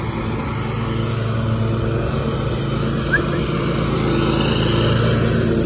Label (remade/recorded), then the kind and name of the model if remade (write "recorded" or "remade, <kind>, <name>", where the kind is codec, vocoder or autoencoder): recorded